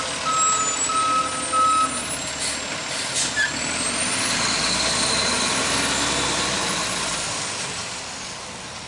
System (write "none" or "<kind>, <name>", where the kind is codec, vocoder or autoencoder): none